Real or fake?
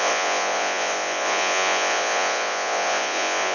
fake